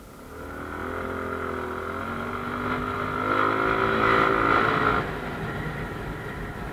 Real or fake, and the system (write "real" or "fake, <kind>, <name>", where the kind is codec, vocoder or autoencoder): real